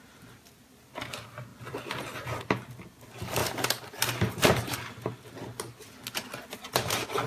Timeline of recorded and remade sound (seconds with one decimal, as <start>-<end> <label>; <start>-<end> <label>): 0.0-3.4 recorded; 3.4-4.9 remade; 4.9-7.3 recorded

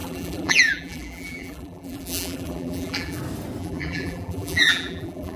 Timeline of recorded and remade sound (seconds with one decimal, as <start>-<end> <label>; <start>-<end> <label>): 0.0-3.2 remade; 3.2-3.6 recorded; 3.6-5.4 remade

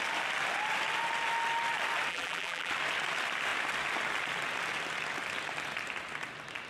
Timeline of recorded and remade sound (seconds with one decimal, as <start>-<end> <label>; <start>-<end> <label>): 0.0-2.1 recorded; 2.1-2.7 remade; 2.7-6.7 recorded

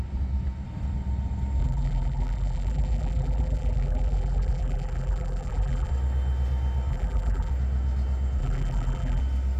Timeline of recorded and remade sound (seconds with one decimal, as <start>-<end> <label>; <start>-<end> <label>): 0.0-1.6 recorded; 1.6-5.9 remade; 5.9-6.9 recorded; 6.9-7.5 remade; 7.5-8.4 recorded; 8.4-9.2 remade; 9.2-9.6 recorded

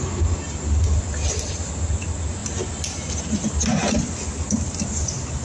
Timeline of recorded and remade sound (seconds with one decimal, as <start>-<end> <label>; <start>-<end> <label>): 0.0-5.4 recorded

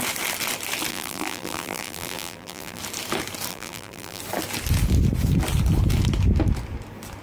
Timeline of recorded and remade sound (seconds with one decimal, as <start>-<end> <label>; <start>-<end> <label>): 0.0-0.9 recorded; 0.9-2.8 remade; 2.8-3.5 recorded; 3.5-4.2 remade; 4.2-7.2 recorded

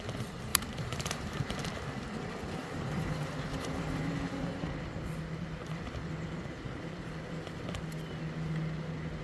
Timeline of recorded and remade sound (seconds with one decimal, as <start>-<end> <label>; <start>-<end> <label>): 0.0-0.5 recorded; 0.5-1.6 remade; 1.6-2.6 recorded; 2.6-4.6 remade; 4.6-9.2 recorded

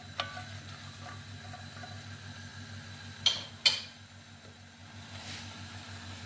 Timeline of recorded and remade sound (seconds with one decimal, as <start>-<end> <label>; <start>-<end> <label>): 0.0-6.3 recorded